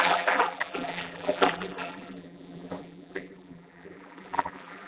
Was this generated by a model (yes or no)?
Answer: yes